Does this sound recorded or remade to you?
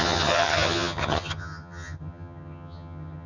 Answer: remade